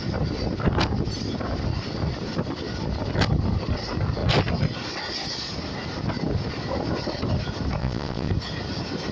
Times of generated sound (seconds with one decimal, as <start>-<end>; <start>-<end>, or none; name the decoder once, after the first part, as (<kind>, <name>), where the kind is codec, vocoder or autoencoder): 7.8-8.3 (vocoder, WaveNeXt)